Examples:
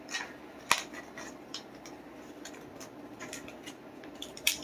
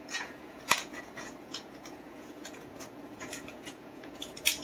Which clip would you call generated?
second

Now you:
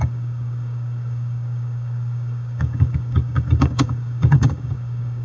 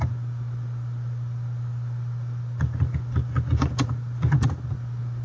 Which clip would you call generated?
first